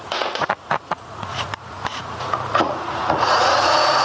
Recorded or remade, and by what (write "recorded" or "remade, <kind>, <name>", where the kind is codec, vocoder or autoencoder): remade, vocoder, Vocos